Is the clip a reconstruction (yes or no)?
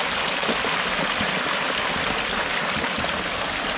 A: no